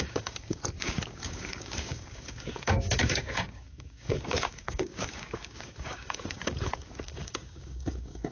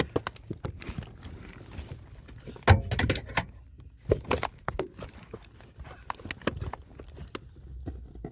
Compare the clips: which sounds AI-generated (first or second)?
first